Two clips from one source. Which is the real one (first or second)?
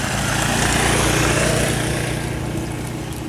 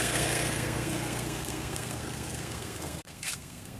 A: first